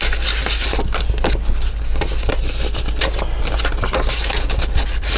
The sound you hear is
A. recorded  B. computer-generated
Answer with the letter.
A